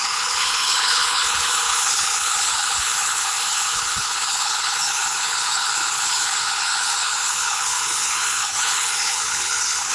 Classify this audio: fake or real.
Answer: fake